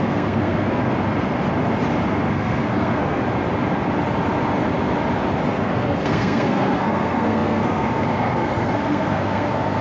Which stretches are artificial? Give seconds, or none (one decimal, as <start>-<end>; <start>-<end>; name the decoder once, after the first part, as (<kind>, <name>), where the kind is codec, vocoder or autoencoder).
0.0-0.8 (codec, SNAC); 2.3-3.2; 5.5-9.8